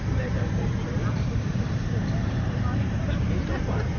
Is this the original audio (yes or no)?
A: no